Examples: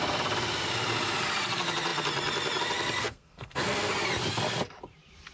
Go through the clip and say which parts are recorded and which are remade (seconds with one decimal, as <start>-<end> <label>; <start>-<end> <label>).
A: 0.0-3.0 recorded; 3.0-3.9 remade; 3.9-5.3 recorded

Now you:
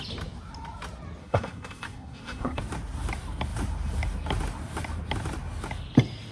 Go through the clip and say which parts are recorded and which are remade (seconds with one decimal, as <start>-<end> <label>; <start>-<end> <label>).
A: 0.0-1.2 recorded; 1.2-2.6 remade; 2.6-6.3 recorded

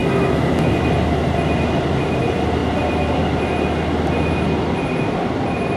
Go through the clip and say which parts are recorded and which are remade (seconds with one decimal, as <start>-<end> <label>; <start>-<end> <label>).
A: 0.0-5.8 recorded